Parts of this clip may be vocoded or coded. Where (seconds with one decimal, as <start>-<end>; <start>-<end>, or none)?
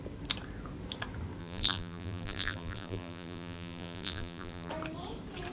1.4-4.7